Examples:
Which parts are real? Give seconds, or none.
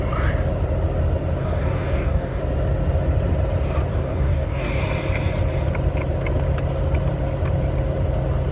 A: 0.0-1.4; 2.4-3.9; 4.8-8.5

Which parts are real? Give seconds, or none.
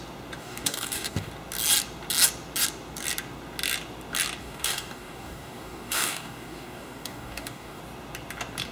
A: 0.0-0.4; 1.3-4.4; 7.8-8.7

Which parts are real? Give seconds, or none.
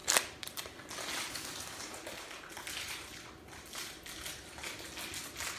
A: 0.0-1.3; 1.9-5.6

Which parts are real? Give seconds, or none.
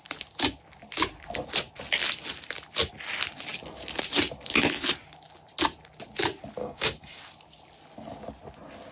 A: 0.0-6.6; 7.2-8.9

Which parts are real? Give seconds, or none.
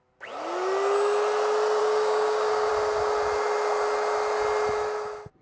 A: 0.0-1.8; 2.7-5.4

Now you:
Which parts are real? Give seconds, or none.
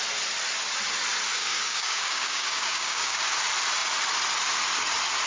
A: 0.0-1.4; 3.2-5.3